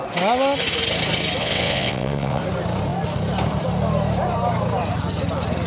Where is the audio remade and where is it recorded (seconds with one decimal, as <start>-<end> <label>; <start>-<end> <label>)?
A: 0.0-1.4 recorded; 1.4-2.4 remade; 2.4-5.7 recorded